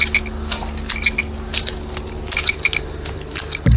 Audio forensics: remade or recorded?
recorded